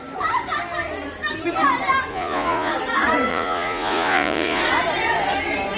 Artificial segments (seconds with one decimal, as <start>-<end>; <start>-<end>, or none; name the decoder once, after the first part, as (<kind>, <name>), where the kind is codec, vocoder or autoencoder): 2.1-2.7 (vocoder, Vocos); 3.3-4.6